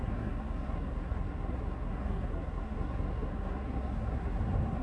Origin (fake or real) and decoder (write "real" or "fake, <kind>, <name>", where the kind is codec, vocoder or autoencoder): fake, codec, SNAC